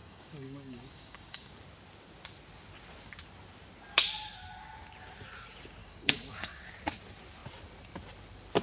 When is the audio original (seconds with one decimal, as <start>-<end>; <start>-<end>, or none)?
1.5-5.8; 6.7-8.6